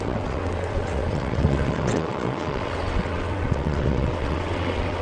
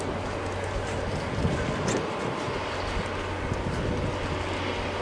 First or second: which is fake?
first